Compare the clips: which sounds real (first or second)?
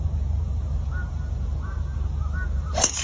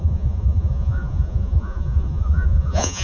first